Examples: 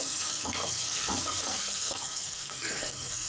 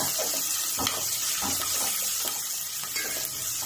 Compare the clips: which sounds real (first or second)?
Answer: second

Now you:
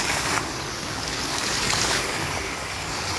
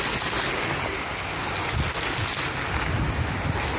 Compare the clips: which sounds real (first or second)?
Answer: second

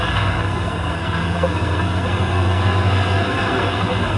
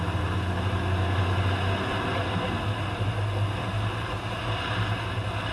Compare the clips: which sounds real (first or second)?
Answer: second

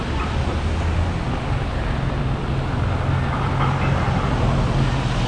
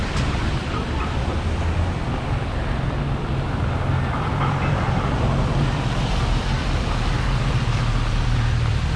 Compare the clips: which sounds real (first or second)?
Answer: first